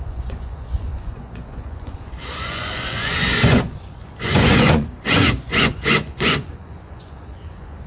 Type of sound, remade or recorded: remade